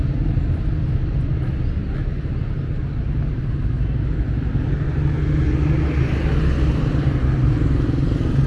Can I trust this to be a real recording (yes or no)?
yes